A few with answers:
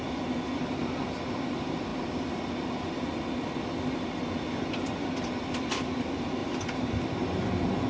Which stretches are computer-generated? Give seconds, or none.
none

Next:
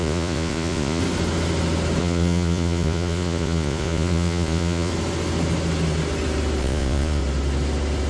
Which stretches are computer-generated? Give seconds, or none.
0.0-1.0; 2.0-4.9; 6.6-7.2

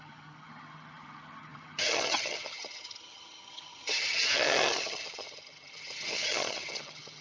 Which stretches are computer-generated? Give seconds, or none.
0.0-7.2

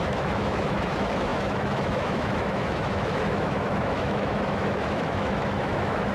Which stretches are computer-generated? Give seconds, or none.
0.0-6.1

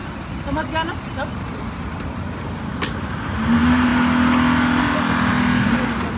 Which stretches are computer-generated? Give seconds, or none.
none

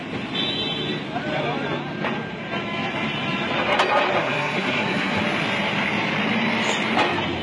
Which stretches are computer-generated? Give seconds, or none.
4.2-5.2

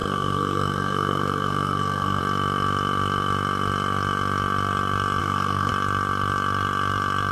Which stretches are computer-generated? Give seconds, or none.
0.0-2.2; 5.2-5.7

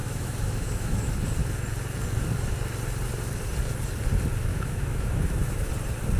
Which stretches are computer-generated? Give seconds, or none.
0.0-1.1; 4.5-5.7